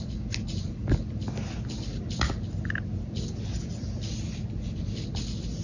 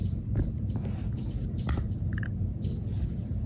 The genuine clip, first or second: first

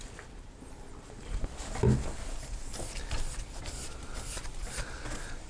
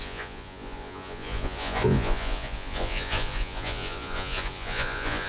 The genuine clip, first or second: first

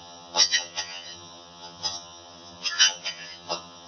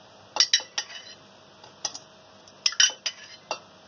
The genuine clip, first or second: second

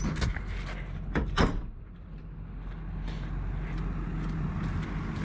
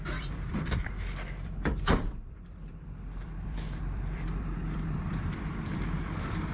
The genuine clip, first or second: first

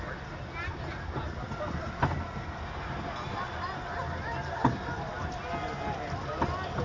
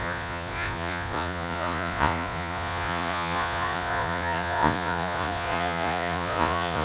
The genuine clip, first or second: first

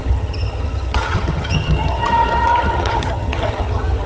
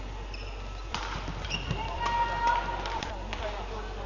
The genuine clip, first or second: second